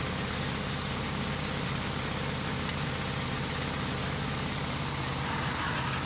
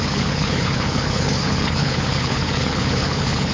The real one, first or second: first